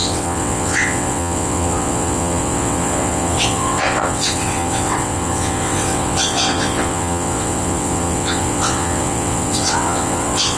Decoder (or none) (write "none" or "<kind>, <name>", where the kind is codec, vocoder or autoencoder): vocoder, WaveNeXt